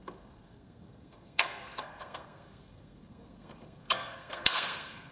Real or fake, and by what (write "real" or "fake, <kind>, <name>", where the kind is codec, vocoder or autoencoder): fake, codec, SNAC